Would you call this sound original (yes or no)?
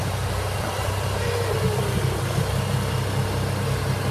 yes